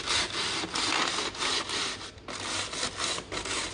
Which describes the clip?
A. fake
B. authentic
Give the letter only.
B